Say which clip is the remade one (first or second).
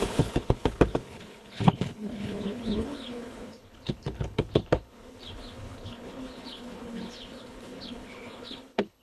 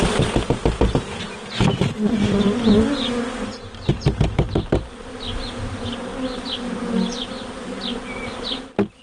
first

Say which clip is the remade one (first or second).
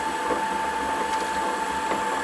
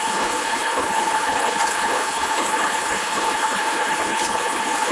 second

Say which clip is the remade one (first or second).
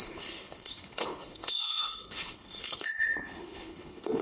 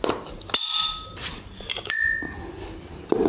first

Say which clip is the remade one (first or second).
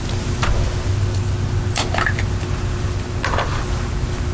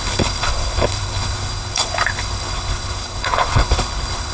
second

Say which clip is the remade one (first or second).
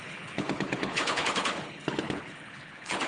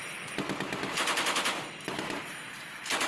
first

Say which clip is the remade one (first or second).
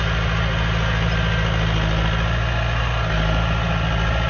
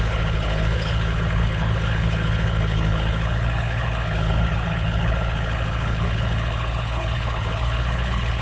second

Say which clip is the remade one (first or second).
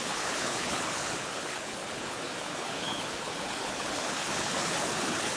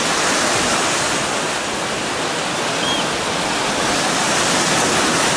first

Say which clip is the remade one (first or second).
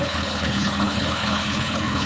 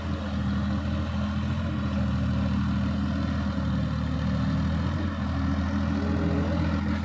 first